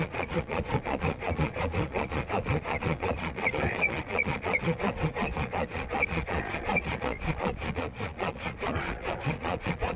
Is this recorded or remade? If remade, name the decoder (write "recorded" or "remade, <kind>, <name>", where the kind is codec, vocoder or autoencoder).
remade, vocoder, Vocos